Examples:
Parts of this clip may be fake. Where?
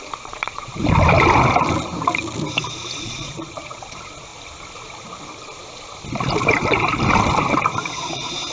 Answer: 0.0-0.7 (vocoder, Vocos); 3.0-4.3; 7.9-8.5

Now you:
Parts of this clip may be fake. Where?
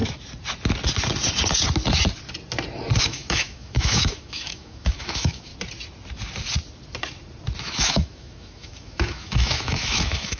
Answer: 3.0-5.5 (autoencoder, DAC-VAE); 7.6-10.4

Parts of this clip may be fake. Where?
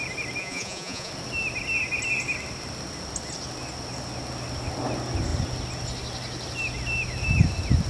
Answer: 0.4-1.1 (vocoder, Vocos)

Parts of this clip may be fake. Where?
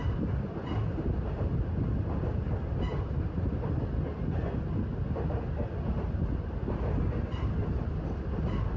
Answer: none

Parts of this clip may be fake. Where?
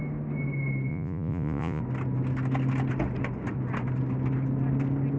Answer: 0.9-1.8 (vocoder, Vocos)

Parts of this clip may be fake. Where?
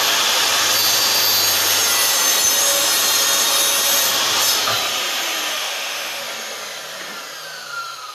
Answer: 5.5-6.2 (autoencoder, DAC-VAE)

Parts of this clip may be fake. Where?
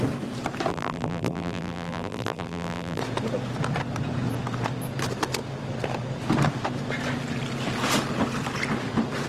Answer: 0.7-3.0 (vocoder, BigVGAN v2)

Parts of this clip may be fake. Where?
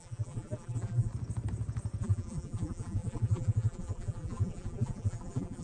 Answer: 0.0-1.1 (vocoder, BigVGAN v2); 2.0-5.6